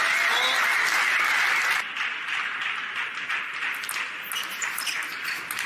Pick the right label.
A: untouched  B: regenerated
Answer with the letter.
A